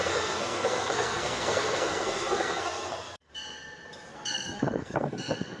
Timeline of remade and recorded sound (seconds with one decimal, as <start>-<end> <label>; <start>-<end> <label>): 0.0-3.3 remade; 3.3-4.1 recorded; 4.1-5.6 remade